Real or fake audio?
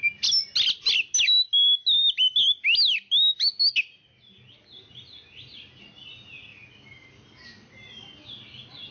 real